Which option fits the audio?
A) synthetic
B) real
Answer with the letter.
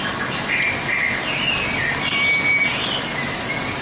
B